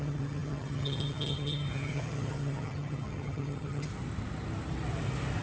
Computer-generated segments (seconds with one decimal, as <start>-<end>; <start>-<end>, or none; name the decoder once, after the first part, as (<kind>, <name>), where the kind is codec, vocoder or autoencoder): 0.0-3.9 (vocoder, HiFi-GAN)